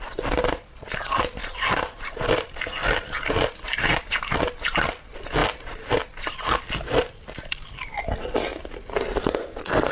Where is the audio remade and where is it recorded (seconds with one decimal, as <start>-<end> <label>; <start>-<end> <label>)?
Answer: 0.0-9.9 recorded